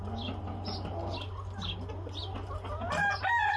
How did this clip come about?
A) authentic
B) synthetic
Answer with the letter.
A